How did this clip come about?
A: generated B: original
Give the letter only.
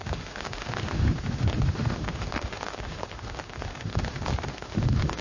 A